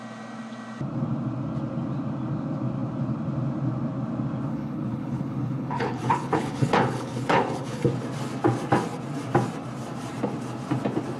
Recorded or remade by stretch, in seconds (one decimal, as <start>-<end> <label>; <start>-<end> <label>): 0.0-4.5 recorded; 4.5-7.9 remade; 7.9-11.2 recorded